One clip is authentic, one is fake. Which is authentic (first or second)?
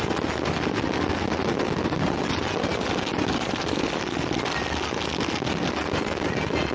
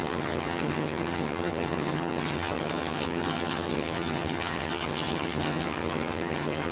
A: first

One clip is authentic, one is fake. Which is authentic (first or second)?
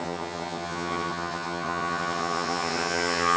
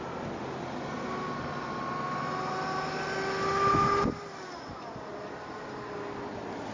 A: second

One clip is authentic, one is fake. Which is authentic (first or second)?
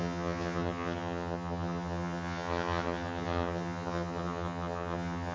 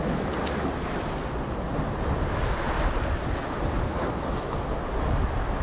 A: second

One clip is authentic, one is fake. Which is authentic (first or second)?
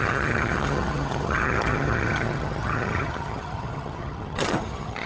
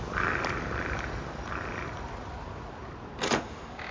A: second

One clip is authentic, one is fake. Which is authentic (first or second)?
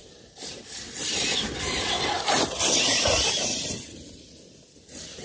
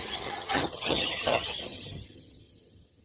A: first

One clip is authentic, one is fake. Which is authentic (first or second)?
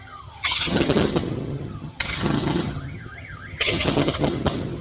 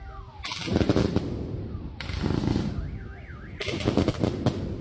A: second